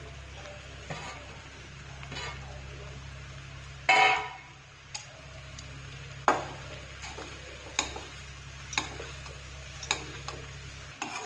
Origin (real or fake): real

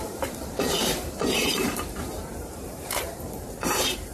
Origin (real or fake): fake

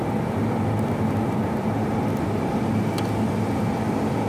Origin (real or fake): real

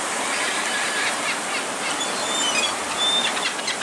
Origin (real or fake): fake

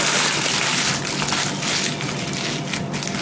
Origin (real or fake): real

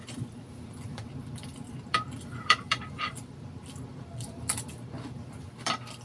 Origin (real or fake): fake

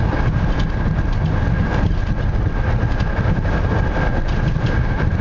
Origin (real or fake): real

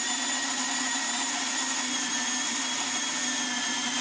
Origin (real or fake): real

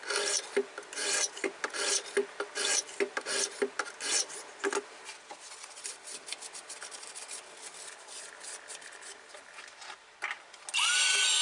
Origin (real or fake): real